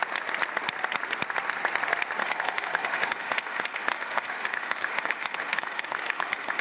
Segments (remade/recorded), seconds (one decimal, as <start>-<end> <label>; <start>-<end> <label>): 0.0-2.2 recorded; 2.2-6.6 remade